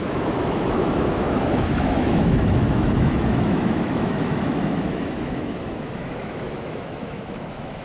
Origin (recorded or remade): remade